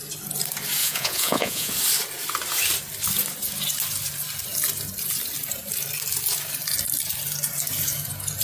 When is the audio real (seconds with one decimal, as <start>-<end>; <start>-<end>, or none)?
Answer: 0.0-0.8; 1.7-8.4